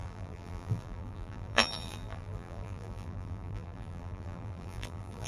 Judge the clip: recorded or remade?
remade